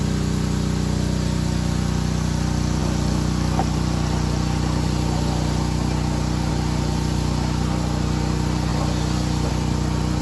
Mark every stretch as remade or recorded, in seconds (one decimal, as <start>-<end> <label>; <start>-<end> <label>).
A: 0.0-10.2 recorded